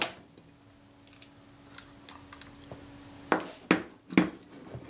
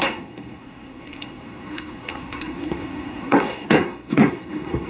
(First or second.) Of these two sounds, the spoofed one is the second